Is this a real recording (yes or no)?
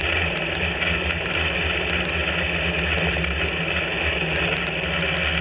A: yes